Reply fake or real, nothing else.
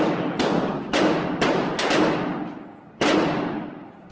real